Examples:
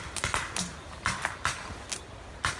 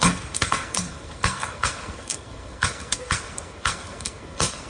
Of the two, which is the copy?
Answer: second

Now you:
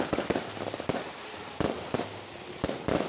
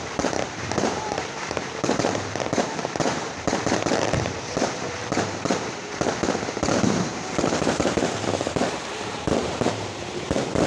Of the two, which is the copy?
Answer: second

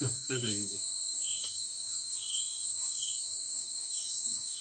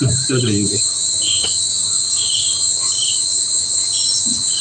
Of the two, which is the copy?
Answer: first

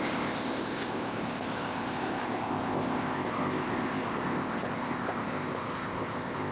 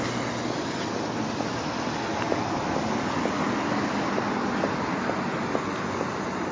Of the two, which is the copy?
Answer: first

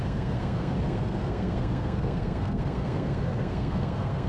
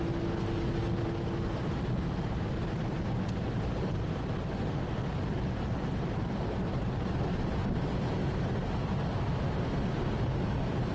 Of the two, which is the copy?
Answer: first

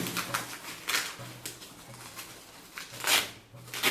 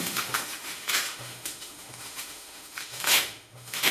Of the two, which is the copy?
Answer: second